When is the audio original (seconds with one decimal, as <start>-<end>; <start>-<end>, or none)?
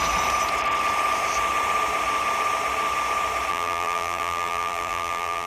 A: 0.0-3.5